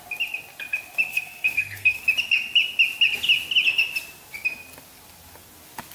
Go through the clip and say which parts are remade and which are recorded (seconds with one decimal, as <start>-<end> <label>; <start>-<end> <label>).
0.0-1.1 recorded; 1.1-2.0 remade; 2.0-5.9 recorded